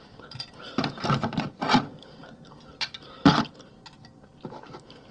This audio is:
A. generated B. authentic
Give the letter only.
A